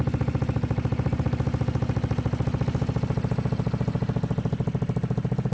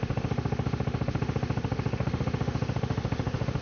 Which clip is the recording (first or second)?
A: first